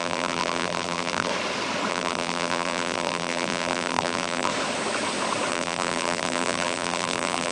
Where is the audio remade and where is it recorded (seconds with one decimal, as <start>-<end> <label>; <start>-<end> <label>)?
0.0-1.3 remade; 1.3-1.9 recorded; 1.9-4.5 remade; 4.5-5.5 recorded; 5.5-7.5 remade

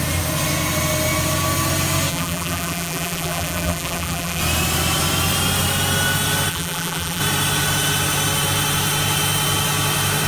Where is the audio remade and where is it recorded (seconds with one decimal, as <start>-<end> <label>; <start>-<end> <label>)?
0.0-2.1 recorded; 2.1-4.4 remade; 4.4-6.5 recorded; 6.5-7.2 remade; 7.2-10.3 recorded

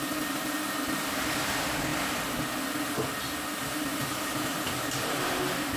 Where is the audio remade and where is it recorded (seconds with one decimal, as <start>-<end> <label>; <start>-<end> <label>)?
0.0-3.9 recorded; 3.9-5.3 remade; 5.3-5.8 recorded